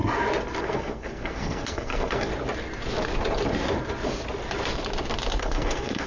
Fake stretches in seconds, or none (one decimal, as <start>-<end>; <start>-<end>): 0.6-2.3; 5.4-6.1